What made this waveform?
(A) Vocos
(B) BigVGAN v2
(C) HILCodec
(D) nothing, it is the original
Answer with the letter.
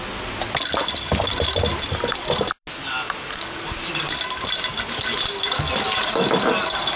D